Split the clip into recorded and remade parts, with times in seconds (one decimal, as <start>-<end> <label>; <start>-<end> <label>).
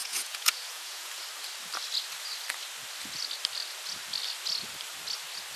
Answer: 0.0-1.1 remade; 1.1-5.6 recorded